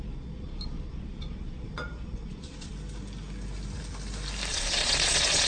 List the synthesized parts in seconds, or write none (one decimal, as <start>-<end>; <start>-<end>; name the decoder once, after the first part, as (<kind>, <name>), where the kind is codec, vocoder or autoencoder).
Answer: 0.0-2.7 (vocoder, Vocos); 4.5-5.5